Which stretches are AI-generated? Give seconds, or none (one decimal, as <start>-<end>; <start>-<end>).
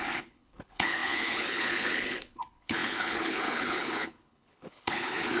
0.0-5.4